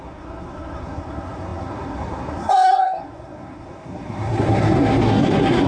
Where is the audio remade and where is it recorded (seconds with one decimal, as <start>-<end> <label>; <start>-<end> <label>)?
0.0-5.7 remade